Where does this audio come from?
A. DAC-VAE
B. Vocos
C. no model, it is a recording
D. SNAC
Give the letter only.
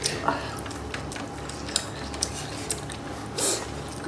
C